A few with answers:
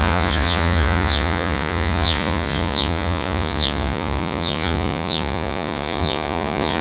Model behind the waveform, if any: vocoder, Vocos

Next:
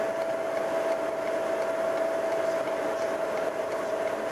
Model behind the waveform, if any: none